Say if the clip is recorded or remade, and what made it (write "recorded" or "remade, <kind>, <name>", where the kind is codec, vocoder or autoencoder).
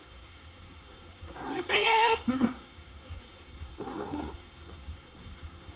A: remade, codec, SNAC